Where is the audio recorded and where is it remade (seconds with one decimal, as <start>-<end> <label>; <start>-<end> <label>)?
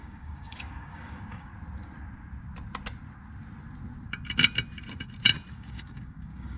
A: 0.0-1.5 remade; 1.5-5.5 recorded; 5.5-6.6 remade